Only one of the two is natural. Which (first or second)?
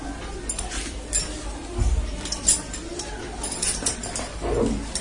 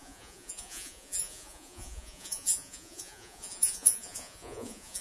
first